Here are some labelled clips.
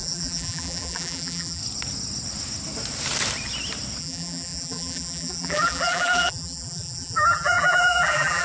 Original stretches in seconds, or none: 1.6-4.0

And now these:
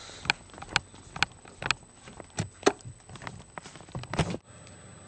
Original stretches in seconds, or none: 0.0-5.1

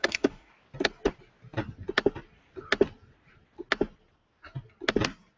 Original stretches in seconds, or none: 0.5-5.4

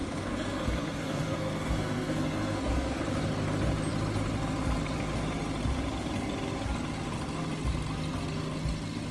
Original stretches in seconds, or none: 3.0-9.1

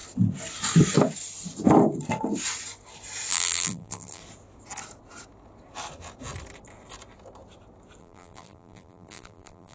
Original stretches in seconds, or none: 0.0-3.3; 4.2-8.0

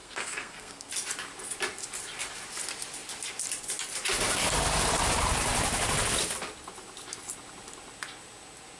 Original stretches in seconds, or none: 0.9-8.8

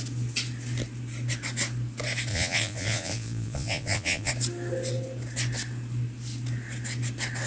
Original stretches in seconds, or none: 0.0-2.3; 4.3-7.5

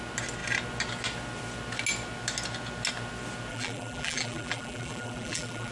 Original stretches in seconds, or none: 0.0-3.5